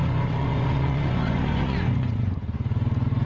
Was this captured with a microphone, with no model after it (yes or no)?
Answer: no